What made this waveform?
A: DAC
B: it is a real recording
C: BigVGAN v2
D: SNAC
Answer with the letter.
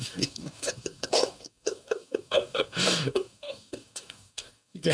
A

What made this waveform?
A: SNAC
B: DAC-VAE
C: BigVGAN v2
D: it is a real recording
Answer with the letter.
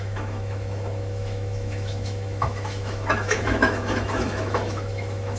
B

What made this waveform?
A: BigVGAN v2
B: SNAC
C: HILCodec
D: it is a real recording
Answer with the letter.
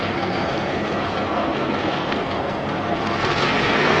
B